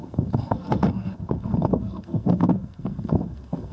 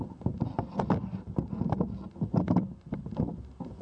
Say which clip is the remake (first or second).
first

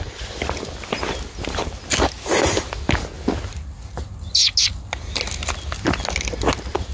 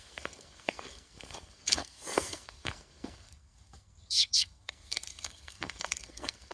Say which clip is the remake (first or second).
second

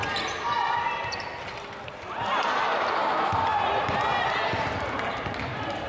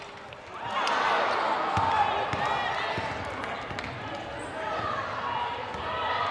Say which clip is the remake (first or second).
first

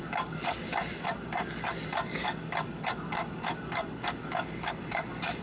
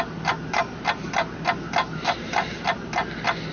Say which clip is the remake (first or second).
first